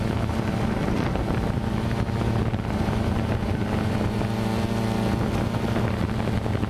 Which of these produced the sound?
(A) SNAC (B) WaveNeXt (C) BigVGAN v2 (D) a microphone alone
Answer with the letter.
D